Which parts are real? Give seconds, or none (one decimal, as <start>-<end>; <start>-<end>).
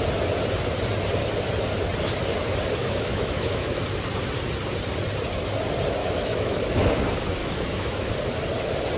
0.0-2.8; 3.7-6.0; 6.6-7.4; 8.1-9.0